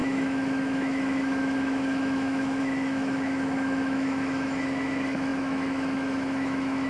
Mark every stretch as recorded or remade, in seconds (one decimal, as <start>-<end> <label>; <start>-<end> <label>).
0.0-6.9 remade